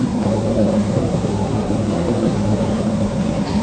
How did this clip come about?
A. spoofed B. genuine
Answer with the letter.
A